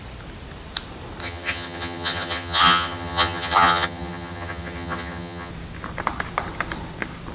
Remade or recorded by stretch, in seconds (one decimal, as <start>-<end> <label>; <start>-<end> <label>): 0.0-1.2 recorded; 1.2-5.5 remade; 5.5-7.3 recorded